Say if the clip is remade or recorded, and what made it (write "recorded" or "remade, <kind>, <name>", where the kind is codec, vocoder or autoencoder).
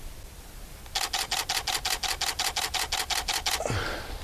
recorded